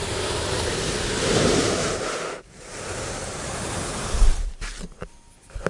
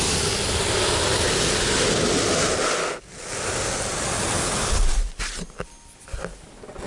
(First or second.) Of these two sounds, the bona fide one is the second